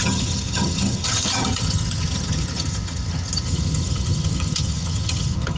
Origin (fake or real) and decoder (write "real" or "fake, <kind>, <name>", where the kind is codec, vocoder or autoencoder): fake, vocoder, HiFi-GAN